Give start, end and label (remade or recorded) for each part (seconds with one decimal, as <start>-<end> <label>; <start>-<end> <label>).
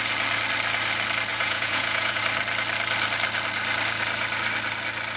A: 0.0-1.3 recorded; 1.3-2.2 remade; 2.2-5.2 recorded